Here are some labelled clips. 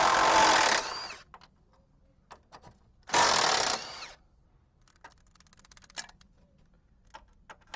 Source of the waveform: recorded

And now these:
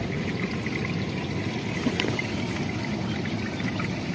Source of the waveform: recorded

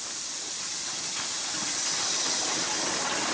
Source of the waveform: recorded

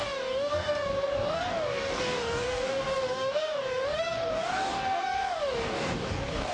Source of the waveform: remade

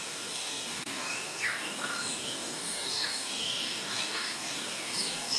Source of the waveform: remade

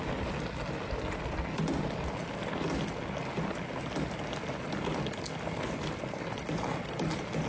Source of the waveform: recorded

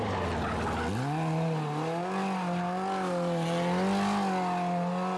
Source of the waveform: recorded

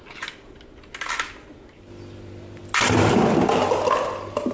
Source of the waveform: recorded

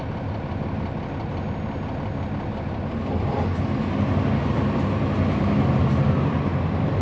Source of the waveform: recorded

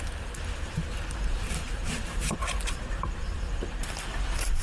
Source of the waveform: remade